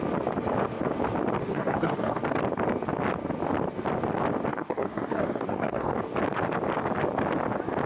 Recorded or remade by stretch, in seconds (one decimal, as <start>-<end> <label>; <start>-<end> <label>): 0.0-1.4 recorded; 1.4-2.2 remade; 2.2-4.5 recorded; 4.5-6.0 remade; 6.0-7.9 recorded